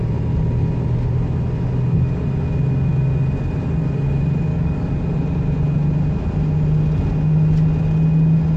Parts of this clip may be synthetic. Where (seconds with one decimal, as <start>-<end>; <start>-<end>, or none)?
4.5-5.0